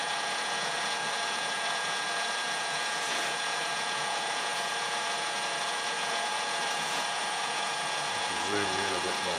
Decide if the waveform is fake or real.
fake